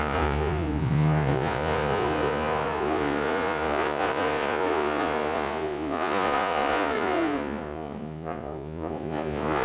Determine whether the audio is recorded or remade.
remade